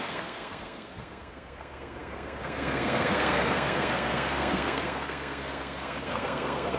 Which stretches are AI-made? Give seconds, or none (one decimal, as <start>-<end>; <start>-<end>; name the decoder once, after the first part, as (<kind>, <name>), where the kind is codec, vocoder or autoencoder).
0.0-6.8 (codec, SNAC)